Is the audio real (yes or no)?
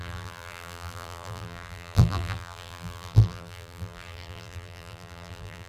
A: no